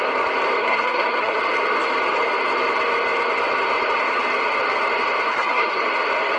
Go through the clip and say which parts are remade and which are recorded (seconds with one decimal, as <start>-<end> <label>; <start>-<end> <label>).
0.0-0.6 recorded; 0.6-1.4 remade; 1.4-5.3 recorded; 5.3-5.8 remade; 5.8-6.4 recorded